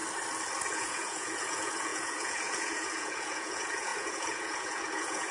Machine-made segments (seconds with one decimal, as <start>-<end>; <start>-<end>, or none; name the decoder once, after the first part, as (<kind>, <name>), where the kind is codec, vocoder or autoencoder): 0.6-5.3 (vocoder, Vocos)